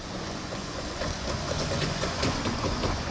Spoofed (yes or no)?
yes